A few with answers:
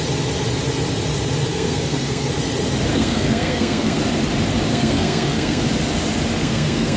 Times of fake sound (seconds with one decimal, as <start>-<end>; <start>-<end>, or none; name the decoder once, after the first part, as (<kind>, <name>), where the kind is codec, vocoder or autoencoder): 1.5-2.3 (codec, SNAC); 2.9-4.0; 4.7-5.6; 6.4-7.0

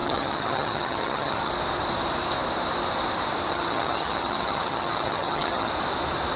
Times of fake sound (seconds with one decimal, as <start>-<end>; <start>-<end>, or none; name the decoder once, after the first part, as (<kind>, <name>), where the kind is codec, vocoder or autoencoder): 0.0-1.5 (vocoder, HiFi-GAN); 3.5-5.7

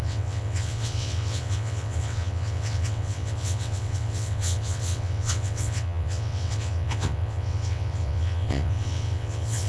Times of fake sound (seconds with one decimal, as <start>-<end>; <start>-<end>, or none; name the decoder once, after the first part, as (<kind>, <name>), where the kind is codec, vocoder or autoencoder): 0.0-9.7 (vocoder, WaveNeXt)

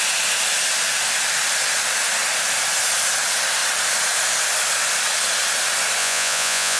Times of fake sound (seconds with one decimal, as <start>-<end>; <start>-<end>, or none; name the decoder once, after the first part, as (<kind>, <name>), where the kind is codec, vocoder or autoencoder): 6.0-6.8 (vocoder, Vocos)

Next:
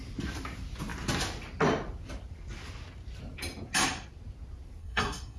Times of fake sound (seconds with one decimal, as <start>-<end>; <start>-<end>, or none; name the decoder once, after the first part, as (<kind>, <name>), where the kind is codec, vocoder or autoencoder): 4.8-5.4 (codec, SNAC)

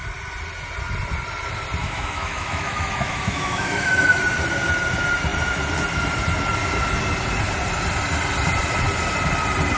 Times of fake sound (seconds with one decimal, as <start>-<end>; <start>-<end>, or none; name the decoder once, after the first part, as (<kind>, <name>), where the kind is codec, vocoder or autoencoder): 1.8-4.2 (autoencoder, DAC-VAE)

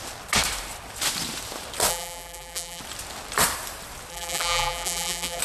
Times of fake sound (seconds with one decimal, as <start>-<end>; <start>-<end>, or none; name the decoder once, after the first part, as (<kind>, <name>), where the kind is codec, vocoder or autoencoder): 1.9-2.8 (vocoder, BigVGAN v2); 4.1-5.4